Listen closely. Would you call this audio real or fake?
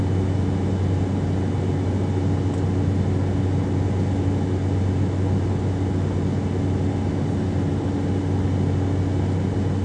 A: real